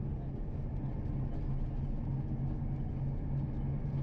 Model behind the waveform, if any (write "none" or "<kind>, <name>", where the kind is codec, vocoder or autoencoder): none